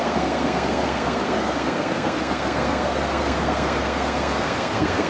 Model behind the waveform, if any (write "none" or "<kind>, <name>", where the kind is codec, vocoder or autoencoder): codec, SNAC